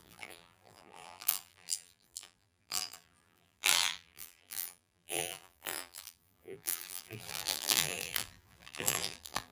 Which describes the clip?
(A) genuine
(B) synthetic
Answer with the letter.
B